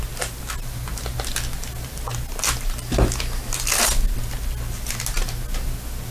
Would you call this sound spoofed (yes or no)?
no